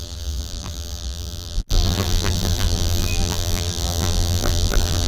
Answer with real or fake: fake